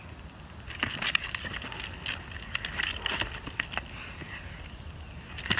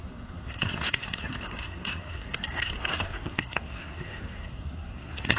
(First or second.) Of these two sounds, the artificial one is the second